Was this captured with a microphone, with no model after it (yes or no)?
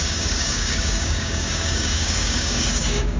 no